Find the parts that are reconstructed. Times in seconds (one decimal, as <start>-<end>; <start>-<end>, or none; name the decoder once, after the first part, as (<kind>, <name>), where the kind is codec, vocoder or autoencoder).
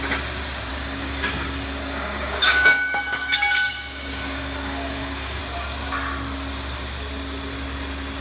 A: 0.7-5.4 (codec, DAC)